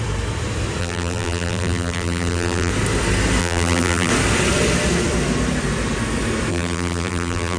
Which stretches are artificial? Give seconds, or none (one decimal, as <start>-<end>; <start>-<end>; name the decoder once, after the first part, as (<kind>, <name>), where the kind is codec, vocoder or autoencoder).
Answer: 0.8-2.7 (vocoder, BigVGAN v2); 3.4-4.1; 6.5-7.6